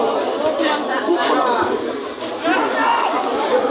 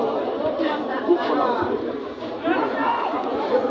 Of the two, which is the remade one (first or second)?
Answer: second